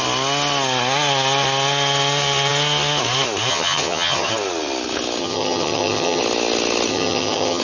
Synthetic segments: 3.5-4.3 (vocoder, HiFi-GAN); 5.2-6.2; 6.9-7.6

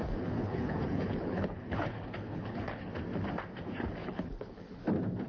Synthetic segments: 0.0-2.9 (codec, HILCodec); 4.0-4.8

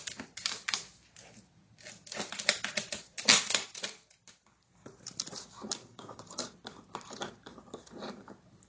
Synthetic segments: 5.9-6.5 (codec, DAC)

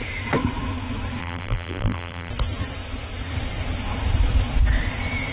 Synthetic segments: 1.2-2.3 (vocoder, BigVGAN v2)